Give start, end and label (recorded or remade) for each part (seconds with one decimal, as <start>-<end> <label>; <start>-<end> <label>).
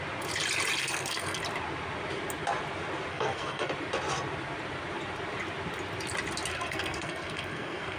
0.0-0.8 recorded; 0.8-1.4 remade; 1.4-3.1 recorded; 3.1-3.7 remade; 3.7-6.5 recorded; 6.5-8.0 remade